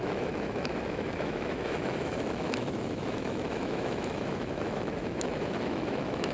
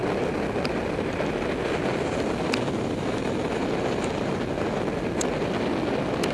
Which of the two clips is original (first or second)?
second